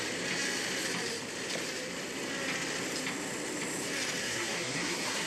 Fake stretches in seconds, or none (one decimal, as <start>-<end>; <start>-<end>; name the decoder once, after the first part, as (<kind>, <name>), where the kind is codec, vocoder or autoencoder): 4.2-5.3 (codec, SNAC)